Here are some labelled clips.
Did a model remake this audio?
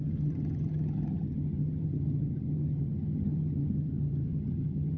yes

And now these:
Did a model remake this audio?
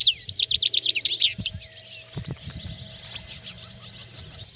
no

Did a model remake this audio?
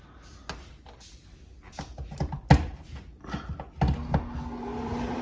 no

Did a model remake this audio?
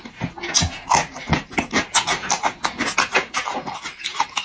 no